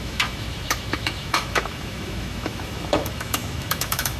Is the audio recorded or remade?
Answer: remade